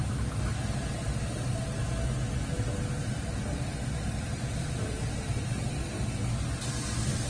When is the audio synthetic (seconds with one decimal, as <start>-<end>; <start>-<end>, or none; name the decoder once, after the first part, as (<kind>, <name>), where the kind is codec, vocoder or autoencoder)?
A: 0.5-1.6 (vocoder, BigVGAN v2); 3.0-6.0